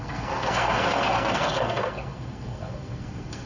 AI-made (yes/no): yes